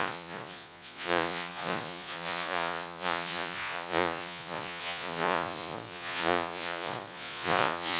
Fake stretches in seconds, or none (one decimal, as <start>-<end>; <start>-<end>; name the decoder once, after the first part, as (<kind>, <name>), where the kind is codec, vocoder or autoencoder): 0.0-8.0 (vocoder, Vocos)